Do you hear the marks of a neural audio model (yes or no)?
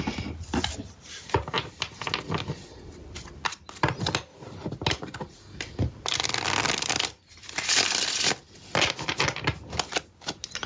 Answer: no